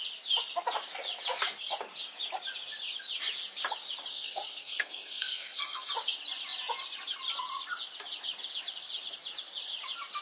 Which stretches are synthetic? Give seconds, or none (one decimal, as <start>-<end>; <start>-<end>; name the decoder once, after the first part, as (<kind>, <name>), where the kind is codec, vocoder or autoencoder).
4.1-5.9 (codec, SNAC)